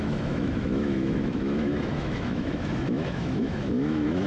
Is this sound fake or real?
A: fake